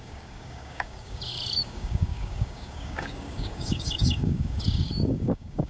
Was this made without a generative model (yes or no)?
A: no